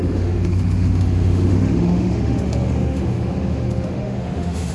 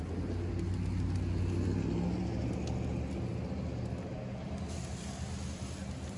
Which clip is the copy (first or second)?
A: first